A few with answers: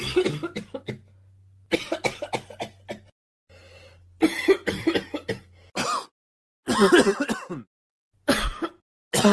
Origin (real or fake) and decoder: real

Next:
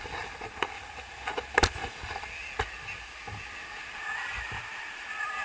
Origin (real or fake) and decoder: real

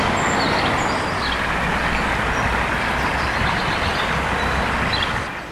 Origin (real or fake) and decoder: real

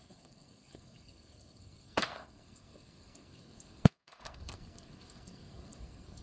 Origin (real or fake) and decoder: fake, codec, SNAC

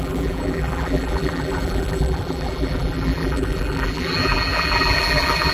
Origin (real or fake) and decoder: fake, vocoder, BigVGAN v2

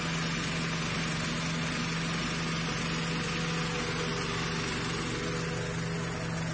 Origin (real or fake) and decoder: real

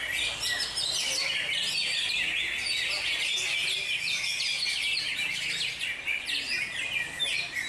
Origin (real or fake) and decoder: real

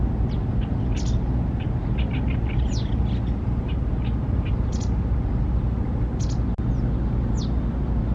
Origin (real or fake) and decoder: real